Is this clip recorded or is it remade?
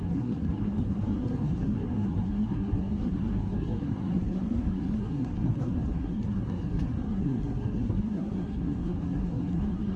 remade